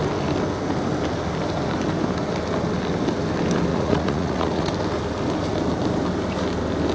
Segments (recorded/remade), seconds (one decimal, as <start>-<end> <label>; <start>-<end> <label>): 0.0-3.7 recorded; 3.7-4.7 remade; 4.7-6.9 recorded